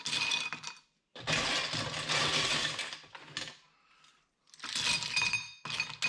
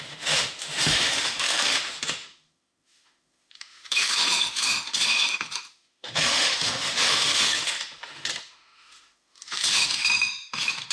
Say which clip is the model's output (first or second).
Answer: second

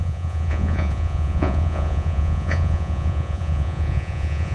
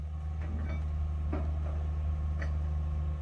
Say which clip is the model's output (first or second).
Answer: first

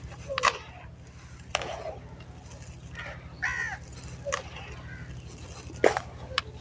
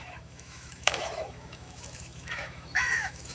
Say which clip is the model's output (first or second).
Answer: second